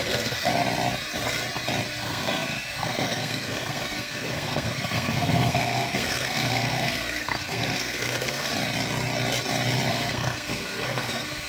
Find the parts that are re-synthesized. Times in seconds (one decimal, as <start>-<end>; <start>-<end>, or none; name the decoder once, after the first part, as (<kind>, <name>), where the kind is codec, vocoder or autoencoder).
0.0-0.5 (codec, SNAC); 2.0-8.5; 9.9-11.5